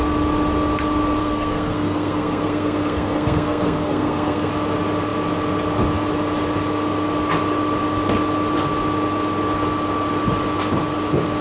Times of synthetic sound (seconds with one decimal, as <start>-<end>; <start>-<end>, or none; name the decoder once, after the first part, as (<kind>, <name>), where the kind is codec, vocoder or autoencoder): 1.2-4.5 (codec, SNAC)